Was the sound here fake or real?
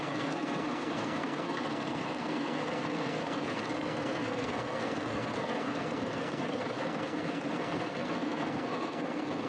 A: fake